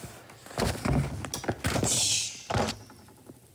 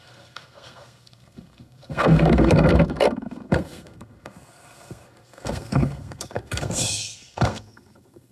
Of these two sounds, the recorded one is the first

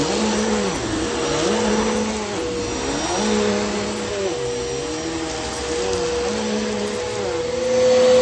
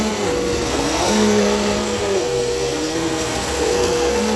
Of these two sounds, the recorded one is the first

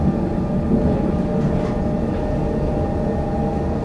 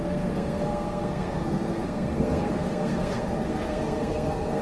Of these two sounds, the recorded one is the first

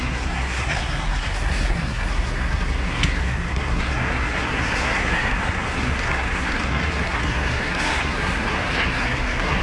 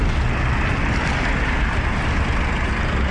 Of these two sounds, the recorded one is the second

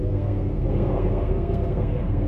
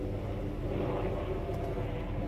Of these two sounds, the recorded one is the second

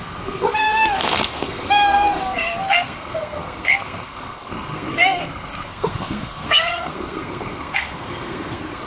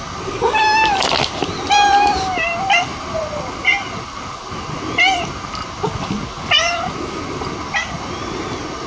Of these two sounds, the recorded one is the second